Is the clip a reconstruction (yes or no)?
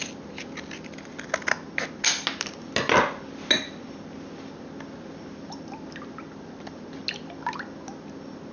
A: no